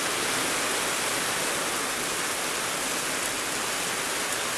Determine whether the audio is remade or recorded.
recorded